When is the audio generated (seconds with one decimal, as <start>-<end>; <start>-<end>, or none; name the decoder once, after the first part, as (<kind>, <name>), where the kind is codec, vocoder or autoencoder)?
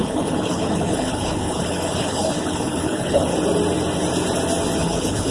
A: 0.0-3.3 (codec, HILCodec); 4.8-5.3